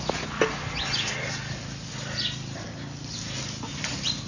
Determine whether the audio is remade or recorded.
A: recorded